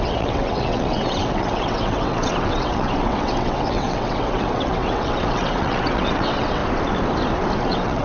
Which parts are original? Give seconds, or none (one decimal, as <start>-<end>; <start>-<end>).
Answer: 6.6-7.6